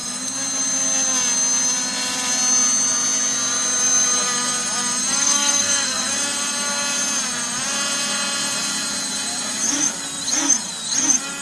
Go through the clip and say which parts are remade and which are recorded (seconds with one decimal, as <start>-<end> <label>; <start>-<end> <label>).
0.0-5.1 recorded; 5.1-6.1 remade; 6.1-11.4 recorded